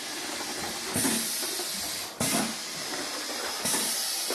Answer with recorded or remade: recorded